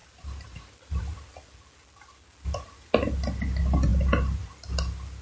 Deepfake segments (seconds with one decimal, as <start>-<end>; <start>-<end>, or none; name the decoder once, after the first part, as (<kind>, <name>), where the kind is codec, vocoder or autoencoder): 0.0-1.0 (vocoder, BigVGAN v2)